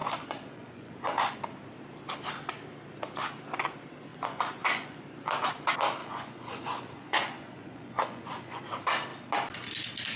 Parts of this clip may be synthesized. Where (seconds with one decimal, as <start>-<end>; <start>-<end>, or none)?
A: 0.0-1.4; 4.1-5.0; 6.0-8.6